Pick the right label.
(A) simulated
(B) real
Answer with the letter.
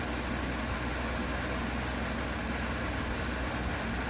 B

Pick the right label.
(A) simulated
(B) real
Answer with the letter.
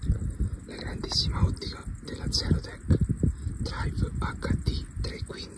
B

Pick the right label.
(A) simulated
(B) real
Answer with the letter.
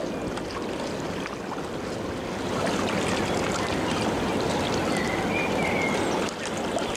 B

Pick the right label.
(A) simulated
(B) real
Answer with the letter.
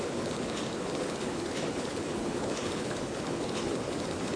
A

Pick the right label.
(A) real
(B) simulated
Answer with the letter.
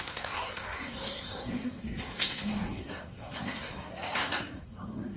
B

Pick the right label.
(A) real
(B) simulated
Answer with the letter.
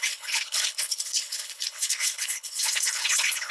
B